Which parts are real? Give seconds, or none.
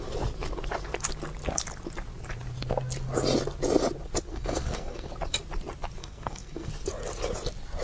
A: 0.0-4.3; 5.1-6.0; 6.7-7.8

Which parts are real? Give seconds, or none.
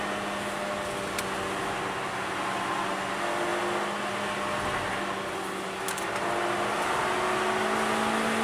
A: 0.0-8.4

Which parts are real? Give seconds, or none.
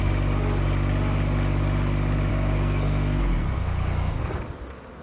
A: 0.0-2.3; 4.4-5.0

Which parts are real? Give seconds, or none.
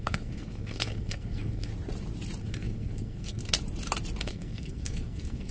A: 1.7-2.4; 3.4-4.2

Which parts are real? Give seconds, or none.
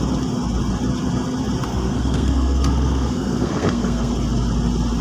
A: 0.0-1.7; 4.1-5.0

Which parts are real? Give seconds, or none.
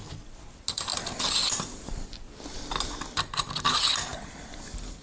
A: 0.0-5.0